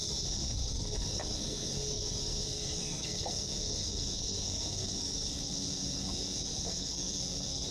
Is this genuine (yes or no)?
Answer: no